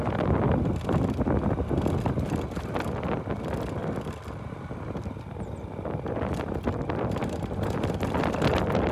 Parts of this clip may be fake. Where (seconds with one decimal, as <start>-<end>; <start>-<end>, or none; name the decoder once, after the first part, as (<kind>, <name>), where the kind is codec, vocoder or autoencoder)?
none